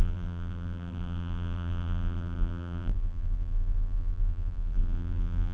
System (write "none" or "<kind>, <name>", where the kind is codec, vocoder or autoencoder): vocoder, BigVGAN v2